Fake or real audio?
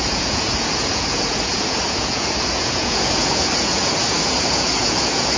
fake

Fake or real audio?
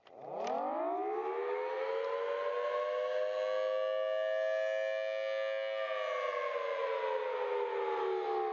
real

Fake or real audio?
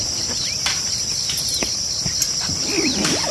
real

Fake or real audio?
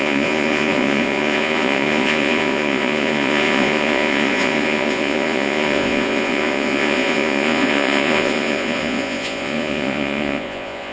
fake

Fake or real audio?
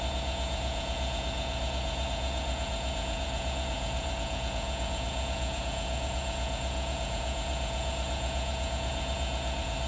fake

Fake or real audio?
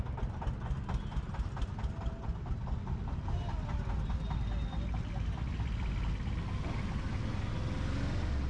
real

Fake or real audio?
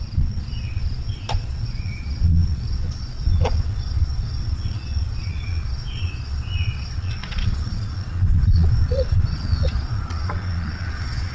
fake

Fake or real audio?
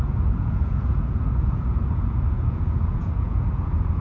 fake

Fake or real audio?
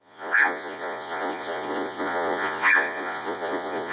fake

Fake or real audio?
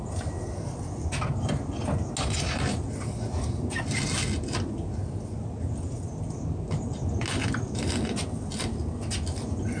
real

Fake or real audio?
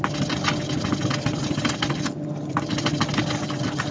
real